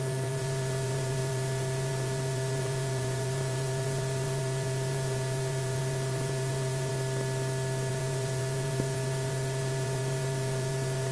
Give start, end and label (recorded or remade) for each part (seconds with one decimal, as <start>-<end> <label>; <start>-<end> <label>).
0.0-6.9 remade; 6.9-7.9 recorded; 7.9-11.1 remade